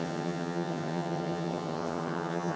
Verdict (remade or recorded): remade